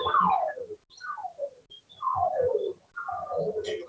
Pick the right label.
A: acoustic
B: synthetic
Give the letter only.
A